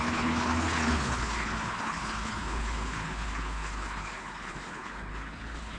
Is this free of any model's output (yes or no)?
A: no